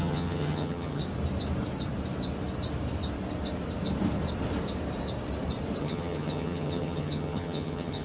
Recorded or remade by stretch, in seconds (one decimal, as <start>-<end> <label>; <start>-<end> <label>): 0.0-1.0 remade; 1.0-5.8 recorded; 5.8-8.0 remade